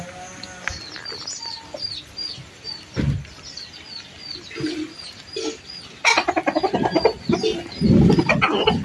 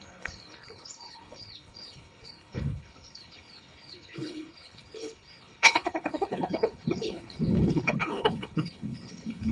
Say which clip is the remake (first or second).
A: second